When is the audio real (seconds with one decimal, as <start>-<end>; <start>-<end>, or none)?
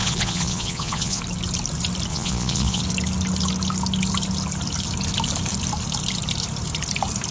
1.2-2.1; 2.8-7.3